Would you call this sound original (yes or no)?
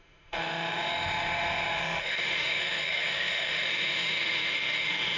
no